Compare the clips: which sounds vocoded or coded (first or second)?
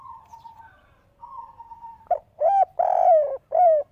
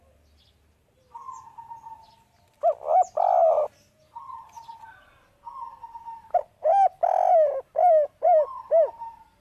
first